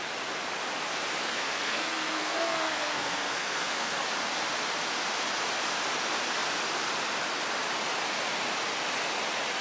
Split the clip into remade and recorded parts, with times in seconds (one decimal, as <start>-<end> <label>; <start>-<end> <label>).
0.0-1.2 recorded; 1.2-4.0 remade; 4.0-9.6 recorded